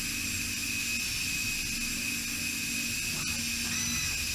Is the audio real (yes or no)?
yes